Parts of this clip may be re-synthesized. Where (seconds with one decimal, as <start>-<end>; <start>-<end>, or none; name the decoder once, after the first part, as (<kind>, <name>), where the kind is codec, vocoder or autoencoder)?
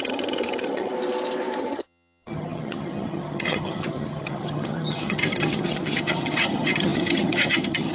0.0-0.9 (vocoder, HiFi-GAN); 1.6-7.9